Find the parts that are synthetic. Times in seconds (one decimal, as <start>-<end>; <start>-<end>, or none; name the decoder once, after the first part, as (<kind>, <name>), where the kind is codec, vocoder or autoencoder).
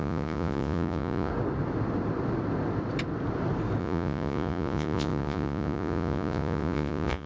0.0-1.3 (vocoder, Vocos); 3.8-7.3